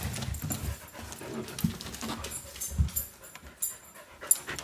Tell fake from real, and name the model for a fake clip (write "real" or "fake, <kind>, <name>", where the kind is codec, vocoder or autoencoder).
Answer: real